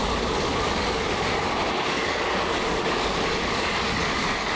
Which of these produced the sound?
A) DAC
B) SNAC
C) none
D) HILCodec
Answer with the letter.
A